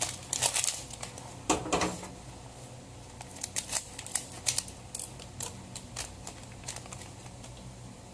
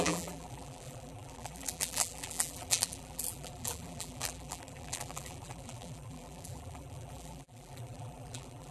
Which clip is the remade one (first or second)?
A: second